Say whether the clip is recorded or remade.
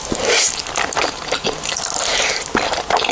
recorded